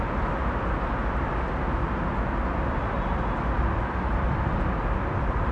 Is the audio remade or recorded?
recorded